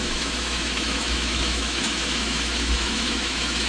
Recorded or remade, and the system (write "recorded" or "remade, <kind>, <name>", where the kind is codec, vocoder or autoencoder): remade, autoencoder, DAC-VAE